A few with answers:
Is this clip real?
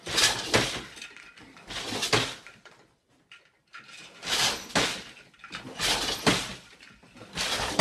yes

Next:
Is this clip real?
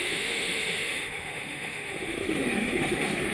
no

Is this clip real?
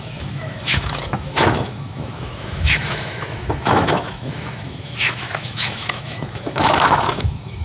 no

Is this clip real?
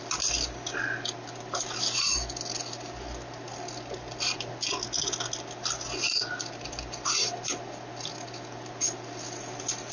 yes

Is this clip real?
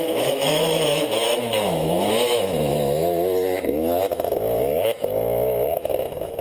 no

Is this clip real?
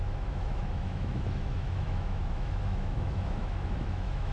no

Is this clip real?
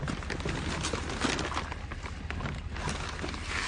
yes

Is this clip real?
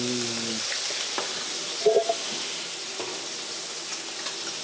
yes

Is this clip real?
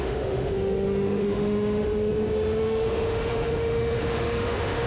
no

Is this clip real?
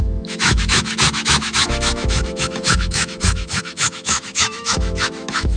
no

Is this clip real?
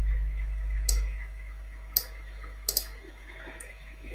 no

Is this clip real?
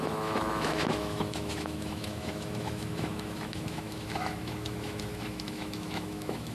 no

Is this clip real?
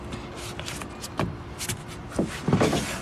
yes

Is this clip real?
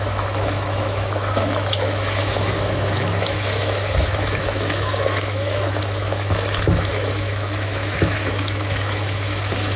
no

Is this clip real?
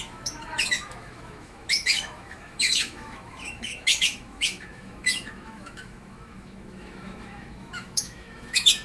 no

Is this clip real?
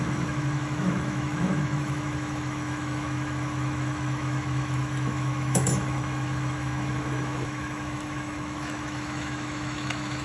no